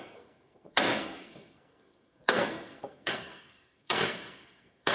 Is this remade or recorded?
remade